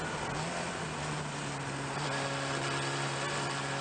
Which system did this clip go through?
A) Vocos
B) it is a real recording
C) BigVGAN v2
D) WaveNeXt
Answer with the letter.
B